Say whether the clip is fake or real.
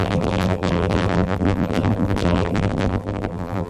fake